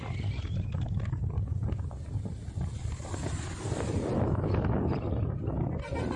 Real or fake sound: real